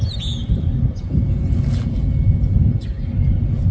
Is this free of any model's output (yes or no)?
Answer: yes